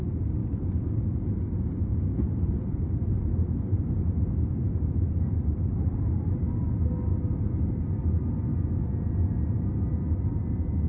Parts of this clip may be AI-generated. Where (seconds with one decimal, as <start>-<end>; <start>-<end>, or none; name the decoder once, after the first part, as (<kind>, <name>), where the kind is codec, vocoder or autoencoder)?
0.4-1.0 (vocoder, BigVGAN v2); 2.1-6.0; 7.1-7.6